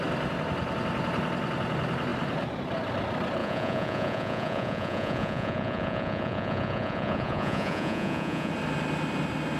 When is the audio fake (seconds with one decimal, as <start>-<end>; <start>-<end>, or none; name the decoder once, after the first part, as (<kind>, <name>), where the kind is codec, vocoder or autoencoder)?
3.4-8.5 (vocoder, Vocos)